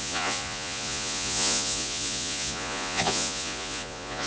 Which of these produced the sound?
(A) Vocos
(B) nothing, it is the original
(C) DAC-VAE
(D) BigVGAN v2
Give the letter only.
A